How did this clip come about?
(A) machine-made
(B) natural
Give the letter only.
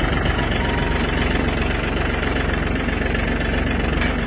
B